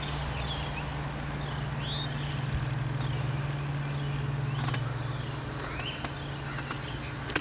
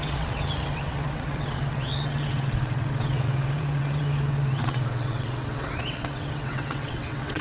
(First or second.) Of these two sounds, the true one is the first